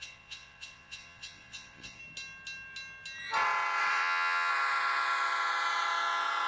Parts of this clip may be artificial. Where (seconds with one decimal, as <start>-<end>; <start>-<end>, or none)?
0.0-2.0; 3.9-4.5